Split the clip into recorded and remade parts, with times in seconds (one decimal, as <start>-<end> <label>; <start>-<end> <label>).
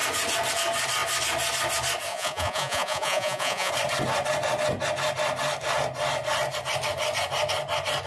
0.0-2.1 recorded; 2.1-3.7 remade; 3.7-8.1 recorded